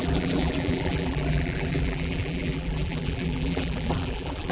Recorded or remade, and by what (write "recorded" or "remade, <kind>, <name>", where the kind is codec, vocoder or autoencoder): remade, vocoder, BigVGAN v2